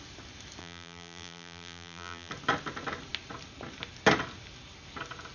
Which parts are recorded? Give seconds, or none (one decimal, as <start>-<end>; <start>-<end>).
0.0-0.6; 2.3-5.3